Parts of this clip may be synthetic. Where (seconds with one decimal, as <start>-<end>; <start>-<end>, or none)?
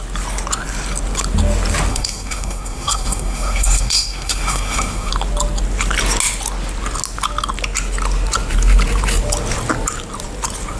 1.9-5.1